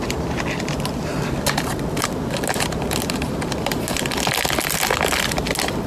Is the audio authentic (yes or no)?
yes